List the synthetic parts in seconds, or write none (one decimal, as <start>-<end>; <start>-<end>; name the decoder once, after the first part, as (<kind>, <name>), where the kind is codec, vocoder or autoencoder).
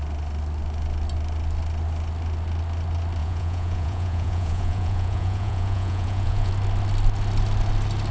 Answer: 3.2-6.5 (vocoder, Vocos)